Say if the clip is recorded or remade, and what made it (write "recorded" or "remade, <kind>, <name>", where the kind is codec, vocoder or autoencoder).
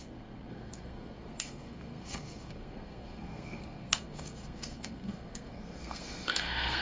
remade, codec, SNAC